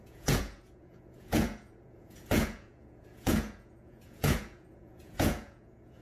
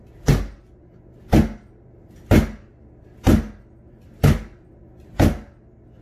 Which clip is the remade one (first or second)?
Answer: first